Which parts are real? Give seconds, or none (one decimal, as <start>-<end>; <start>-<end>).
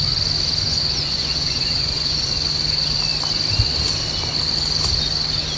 0.0-0.7; 2.3-5.6